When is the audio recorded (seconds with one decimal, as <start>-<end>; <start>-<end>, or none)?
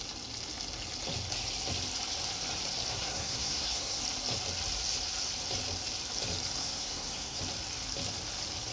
0.0-2.9; 4.0-6.6; 7.4-8.7